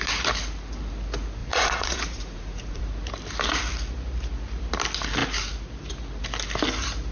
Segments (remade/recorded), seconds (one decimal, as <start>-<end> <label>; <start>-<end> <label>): 0.0-1.4 recorded; 1.4-2.8 remade; 2.8-7.1 recorded